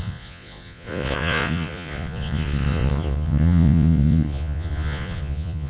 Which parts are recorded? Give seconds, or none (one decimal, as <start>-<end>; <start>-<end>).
none